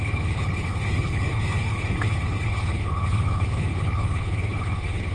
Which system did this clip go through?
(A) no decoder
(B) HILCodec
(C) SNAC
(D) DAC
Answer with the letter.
B